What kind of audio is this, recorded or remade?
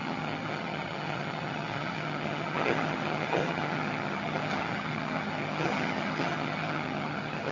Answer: remade